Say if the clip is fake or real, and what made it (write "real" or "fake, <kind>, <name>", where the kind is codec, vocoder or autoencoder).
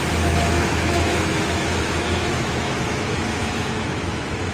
fake, autoencoder, DAC-VAE